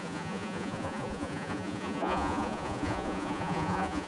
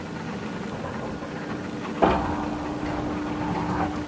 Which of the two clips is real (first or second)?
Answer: second